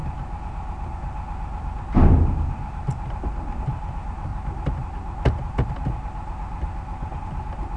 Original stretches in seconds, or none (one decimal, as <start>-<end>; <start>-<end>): 0.0-3.6; 4.3-7.2